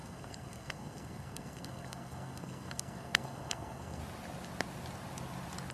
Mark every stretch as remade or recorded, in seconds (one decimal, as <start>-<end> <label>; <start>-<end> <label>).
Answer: 0.0-4.0 remade; 4.0-5.7 recorded